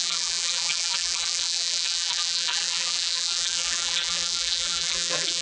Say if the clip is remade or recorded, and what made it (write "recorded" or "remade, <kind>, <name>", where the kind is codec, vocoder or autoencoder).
remade, vocoder, BigVGAN v2